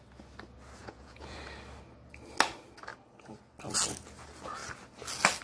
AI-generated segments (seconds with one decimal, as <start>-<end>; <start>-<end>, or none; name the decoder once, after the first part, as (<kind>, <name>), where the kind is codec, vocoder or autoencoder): 0.8-1.4 (vocoder, Vocos)